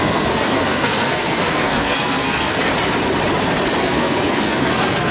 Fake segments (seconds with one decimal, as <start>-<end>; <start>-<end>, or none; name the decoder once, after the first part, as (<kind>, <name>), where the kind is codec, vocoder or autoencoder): 0.0-2.7 (codec, SNAC); 3.8-5.1